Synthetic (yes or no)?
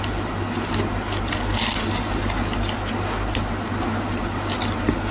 no